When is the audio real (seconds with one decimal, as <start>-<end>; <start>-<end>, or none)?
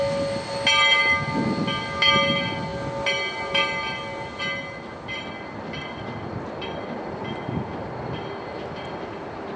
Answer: 0.0-9.6